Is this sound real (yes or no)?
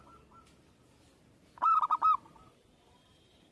yes